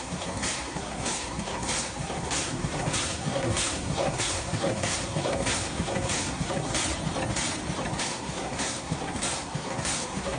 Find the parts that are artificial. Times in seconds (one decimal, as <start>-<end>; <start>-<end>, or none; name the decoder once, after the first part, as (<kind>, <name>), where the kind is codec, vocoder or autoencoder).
0.0-6.7 (codec, SNAC); 8.0-10.4